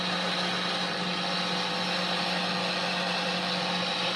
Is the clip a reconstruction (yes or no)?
no